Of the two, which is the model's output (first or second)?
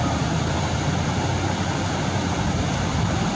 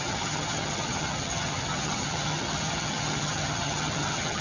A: second